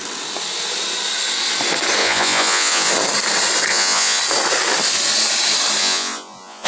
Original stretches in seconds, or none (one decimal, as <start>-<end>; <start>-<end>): 0.0-2.0; 2.9-3.7; 4.2-5.8